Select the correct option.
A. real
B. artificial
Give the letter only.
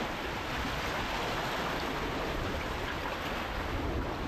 A